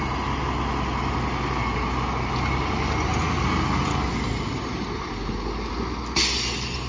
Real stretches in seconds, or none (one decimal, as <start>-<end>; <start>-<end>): 0.0-6.9